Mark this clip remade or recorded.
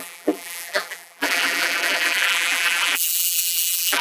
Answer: remade